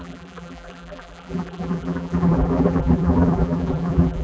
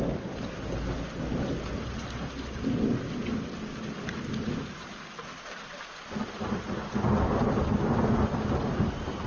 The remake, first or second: first